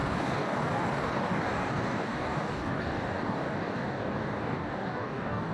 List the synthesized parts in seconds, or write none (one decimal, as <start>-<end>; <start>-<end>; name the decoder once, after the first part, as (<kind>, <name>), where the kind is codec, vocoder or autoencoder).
0.0-5.5 (codec, DAC)